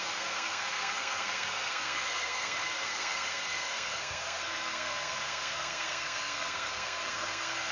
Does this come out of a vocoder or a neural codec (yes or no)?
yes